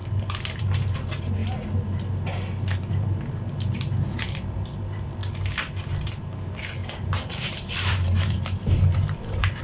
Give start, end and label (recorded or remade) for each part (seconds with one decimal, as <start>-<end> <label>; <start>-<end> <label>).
0.0-6.8 recorded; 6.8-8.4 remade; 8.4-9.6 recorded